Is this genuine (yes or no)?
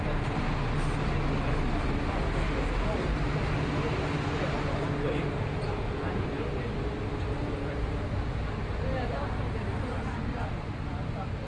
yes